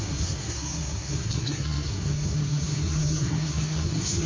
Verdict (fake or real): fake